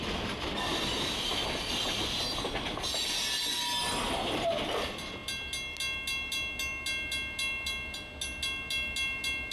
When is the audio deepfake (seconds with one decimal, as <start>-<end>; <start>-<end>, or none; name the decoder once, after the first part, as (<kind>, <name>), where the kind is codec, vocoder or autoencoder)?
none

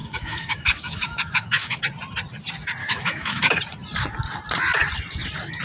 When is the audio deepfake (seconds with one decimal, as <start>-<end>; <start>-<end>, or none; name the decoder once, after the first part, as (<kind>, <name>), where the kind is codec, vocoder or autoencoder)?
0.0-1.8 (autoencoder, DAC-VAE); 2.8-3.6

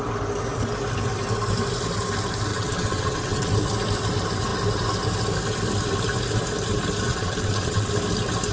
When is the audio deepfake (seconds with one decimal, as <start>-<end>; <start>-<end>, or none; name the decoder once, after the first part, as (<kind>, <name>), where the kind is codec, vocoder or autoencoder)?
2.5-3.5 (vocoder, WaveNeXt); 7.1-7.9

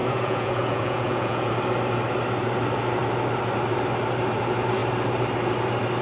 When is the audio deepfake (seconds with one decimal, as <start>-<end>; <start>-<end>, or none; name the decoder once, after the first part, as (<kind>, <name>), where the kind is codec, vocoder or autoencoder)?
0.0-1.5 (vocoder, Vocos)

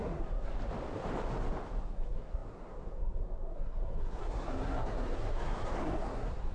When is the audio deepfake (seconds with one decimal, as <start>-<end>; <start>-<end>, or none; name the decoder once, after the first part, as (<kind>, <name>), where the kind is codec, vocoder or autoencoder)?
0.0-0.5 (codec, SNAC); 1.8-6.5

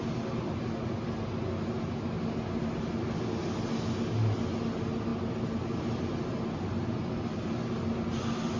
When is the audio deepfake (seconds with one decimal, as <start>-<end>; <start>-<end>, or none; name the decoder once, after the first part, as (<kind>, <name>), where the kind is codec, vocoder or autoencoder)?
none

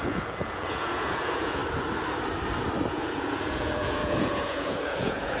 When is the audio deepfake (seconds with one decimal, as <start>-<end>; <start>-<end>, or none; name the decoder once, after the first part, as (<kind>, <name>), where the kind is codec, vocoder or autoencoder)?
0.0-1.6 (vocoder, Vocos); 2.9-5.4